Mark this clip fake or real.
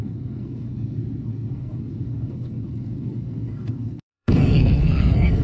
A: fake